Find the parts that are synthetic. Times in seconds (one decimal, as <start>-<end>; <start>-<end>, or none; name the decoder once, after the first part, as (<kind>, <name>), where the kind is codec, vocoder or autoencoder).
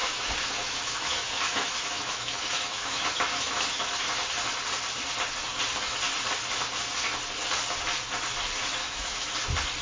0.0-3.9 (autoencoder, DAC-VAE); 8.8-9.3